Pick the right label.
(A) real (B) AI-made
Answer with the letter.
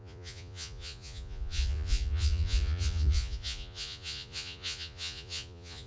B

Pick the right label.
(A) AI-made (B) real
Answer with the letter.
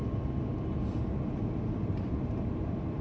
B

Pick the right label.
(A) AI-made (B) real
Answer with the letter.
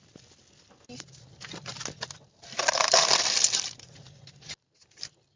B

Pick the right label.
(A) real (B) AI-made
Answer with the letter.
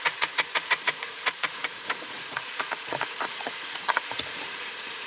B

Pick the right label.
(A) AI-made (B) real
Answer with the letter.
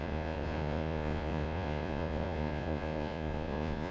A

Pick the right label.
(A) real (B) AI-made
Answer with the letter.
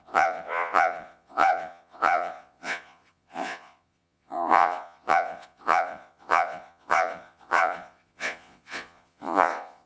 B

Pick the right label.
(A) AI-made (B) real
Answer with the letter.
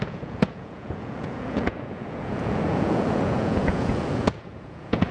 A